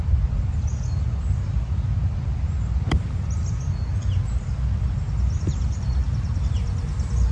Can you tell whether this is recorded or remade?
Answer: recorded